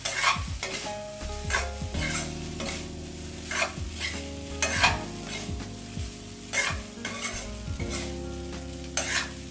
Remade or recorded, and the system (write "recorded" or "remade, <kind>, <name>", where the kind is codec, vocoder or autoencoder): recorded